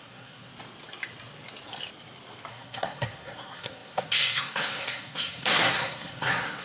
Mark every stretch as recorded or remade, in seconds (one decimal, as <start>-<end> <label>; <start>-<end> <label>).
0.0-0.5 remade; 0.5-2.5 recorded; 2.5-6.6 remade